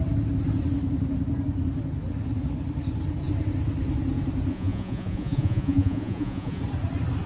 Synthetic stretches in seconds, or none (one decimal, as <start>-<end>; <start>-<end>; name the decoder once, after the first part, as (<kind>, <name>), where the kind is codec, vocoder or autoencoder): 4.5-6.6 (vocoder, Vocos)

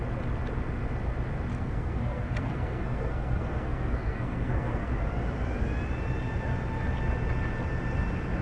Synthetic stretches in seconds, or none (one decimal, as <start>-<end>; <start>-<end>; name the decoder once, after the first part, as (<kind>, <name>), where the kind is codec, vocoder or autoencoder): 1.5-4.9 (codec, SNAC)

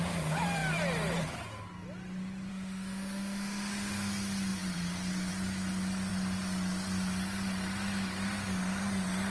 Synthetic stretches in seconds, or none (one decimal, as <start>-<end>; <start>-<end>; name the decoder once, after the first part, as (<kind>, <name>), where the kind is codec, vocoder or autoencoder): 2.5-4.1 (autoencoder, DAC-VAE)

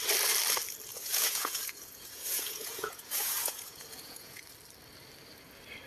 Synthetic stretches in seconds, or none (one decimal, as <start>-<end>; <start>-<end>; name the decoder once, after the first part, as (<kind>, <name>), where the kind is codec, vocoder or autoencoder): 0.9-4.4 (vocoder, Vocos)